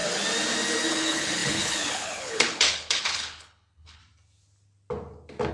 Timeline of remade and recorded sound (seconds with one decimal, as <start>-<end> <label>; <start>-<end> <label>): 0.0-0.9 recorded; 0.9-4.0 remade; 4.0-5.5 recorded